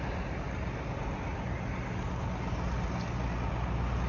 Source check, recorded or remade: recorded